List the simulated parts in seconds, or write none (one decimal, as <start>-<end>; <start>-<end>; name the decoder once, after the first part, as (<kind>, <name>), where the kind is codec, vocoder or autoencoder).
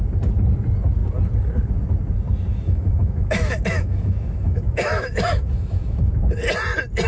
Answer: 2.5-6.1 (autoencoder, DAC-VAE)